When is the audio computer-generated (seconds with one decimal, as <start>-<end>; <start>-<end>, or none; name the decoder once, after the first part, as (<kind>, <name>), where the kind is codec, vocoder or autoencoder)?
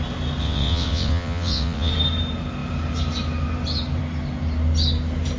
0.4-1.9 (vocoder, WaveNeXt)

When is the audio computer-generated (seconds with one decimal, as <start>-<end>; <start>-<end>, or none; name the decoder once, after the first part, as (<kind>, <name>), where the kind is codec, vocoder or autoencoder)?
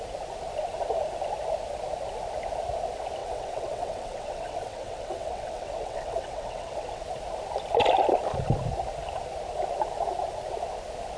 3.2-7.0 (vocoder, WaveNeXt)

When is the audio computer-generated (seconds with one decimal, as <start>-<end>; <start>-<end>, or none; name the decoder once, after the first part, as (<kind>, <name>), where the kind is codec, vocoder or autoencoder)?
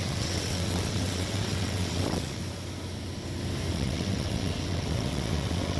0.0-2.4 (vocoder, WaveNeXt); 3.7-5.8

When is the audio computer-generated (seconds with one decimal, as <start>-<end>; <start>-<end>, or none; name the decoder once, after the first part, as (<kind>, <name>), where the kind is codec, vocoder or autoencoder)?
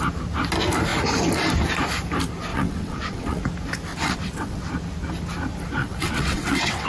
2.5-3.4 (vocoder, WaveNeXt); 3.9-4.7; 5.8-6.9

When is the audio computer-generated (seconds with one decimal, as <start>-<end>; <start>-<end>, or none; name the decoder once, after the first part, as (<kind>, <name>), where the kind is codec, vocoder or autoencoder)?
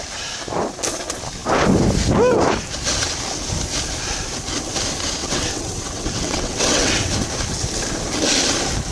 5.2-7.1 (vocoder, WaveNeXt)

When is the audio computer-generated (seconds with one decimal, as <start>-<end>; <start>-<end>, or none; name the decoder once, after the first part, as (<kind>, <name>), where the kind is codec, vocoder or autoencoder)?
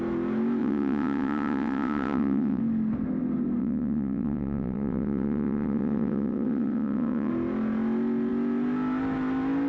0.6-2.6 (vocoder, WaveNeXt); 3.6-7.3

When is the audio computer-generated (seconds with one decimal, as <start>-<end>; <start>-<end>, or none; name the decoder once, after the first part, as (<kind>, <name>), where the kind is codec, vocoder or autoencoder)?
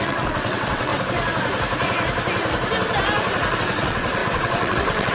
0.0-0.9 (vocoder, WaveNeXt); 3.6-5.1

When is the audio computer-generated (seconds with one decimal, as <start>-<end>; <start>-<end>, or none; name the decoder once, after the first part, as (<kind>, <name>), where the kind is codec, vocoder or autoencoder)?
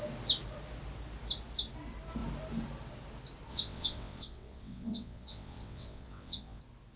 3.5-6.6 (vocoder, WaveNeXt)